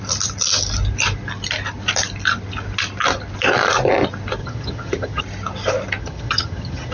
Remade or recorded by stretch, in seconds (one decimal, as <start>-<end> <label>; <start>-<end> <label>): 0.0-4.4 recorded; 4.4-5.2 remade; 5.2-6.0 recorded; 6.0-6.9 remade